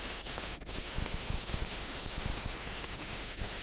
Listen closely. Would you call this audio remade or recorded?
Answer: remade